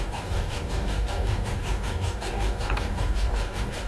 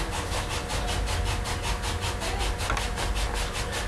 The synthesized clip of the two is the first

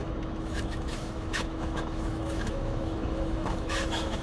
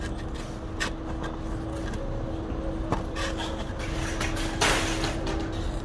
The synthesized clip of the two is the first